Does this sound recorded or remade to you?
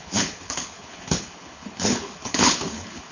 remade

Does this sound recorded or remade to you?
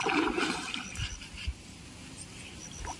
recorded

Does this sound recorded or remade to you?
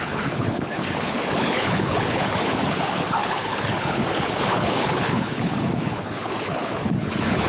remade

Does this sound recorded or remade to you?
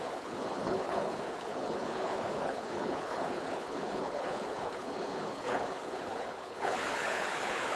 remade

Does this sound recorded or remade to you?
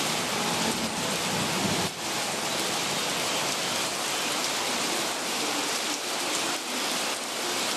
recorded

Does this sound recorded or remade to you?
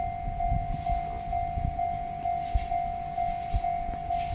recorded